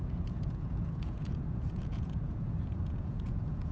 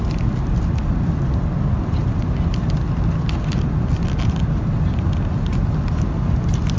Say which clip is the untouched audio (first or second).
second